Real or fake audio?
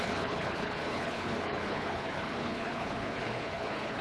fake